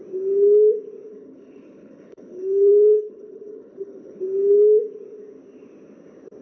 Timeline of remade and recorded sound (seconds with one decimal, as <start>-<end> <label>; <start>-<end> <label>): 0.0-1.1 recorded; 1.1-4.2 remade; 4.2-6.4 recorded